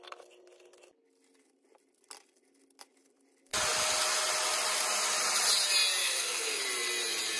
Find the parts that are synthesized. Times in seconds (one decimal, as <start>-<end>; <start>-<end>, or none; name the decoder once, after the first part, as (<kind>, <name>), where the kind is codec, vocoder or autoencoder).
6.0-6.6 (codec, SNAC)